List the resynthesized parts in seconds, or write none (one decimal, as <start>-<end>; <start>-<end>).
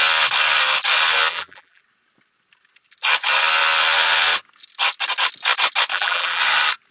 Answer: 1.3-1.8; 5.9-6.4